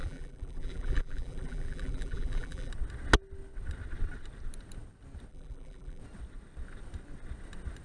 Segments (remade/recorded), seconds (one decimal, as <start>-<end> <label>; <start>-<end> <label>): 0.0-2.7 remade; 2.7-5.3 recorded; 5.3-6.0 remade; 6.0-7.8 recorded